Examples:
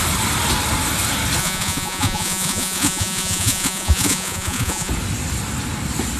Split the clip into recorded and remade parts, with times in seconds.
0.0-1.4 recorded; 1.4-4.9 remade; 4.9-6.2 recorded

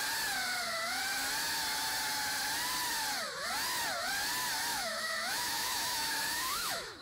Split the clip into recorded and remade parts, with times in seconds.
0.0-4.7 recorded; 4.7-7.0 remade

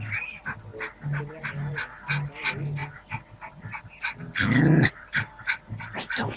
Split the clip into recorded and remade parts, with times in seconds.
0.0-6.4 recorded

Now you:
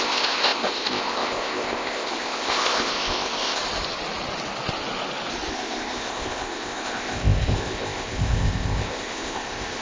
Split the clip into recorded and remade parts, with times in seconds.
0.0-3.6 remade; 3.6-5.5 recorded; 5.5-9.8 remade